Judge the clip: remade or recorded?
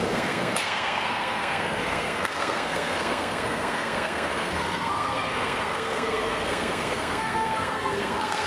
remade